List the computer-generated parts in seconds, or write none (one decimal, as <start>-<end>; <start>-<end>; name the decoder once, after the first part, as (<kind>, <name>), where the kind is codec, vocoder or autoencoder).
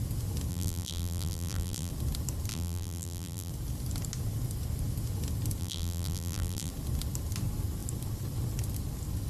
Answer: 0.5-1.9 (vocoder, BigVGAN v2); 2.5-3.5; 5.6-6.7